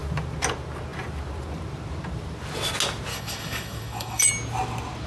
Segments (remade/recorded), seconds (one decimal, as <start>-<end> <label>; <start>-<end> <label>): 0.0-3.1 recorded; 3.1-4.3 remade; 4.3-5.1 recorded